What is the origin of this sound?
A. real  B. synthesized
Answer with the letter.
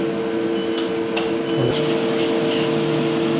A